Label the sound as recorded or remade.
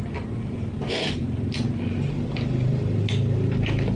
recorded